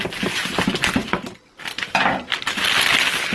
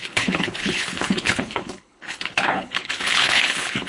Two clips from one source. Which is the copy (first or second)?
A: second